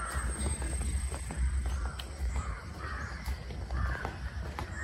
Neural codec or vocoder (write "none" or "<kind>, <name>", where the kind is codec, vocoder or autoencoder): none